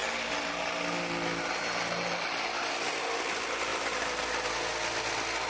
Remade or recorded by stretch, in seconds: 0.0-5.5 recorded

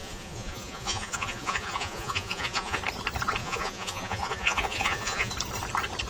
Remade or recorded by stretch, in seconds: 0.0-2.8 remade; 2.8-3.4 recorded; 3.4-5.3 remade; 5.3-6.1 recorded